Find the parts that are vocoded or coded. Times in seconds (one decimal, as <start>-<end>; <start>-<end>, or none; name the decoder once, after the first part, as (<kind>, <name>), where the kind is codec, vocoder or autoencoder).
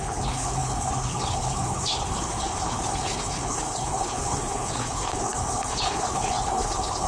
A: 0.0-7.1 (codec, HILCodec)